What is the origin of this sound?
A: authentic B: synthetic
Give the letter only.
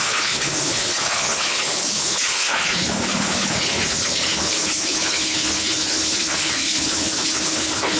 B